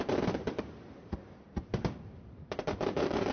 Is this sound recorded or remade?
remade